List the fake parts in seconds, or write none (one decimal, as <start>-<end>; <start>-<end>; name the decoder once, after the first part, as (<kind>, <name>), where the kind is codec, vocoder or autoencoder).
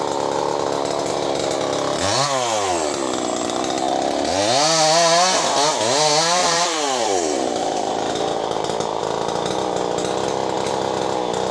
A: 6.4-9.0 (vocoder, BigVGAN v2)